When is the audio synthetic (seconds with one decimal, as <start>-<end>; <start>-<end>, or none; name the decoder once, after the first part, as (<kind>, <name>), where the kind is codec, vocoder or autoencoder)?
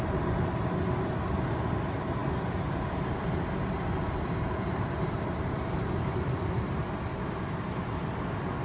none